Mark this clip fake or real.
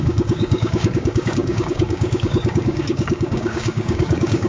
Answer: fake